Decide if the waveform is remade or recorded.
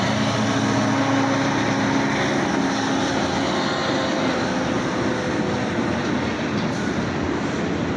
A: recorded